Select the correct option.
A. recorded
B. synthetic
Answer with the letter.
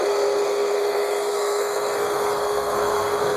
B